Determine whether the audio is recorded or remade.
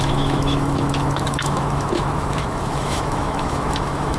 remade